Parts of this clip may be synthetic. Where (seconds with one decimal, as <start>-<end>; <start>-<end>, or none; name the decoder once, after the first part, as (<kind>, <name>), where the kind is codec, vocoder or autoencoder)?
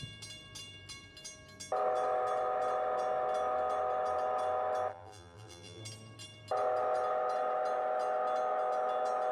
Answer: 4.9-5.8 (vocoder, BigVGAN v2)